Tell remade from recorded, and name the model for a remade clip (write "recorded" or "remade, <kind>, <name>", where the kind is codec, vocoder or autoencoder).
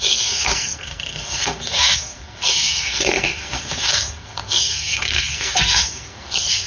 remade, codec, SNAC